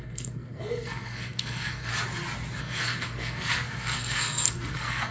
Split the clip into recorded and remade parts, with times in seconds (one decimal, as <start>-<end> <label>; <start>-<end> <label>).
0.0-1.9 remade; 1.9-2.6 recorded; 2.6-5.1 remade